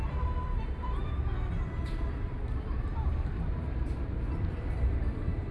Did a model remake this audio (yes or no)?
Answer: yes